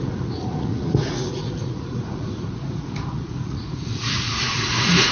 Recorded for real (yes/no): no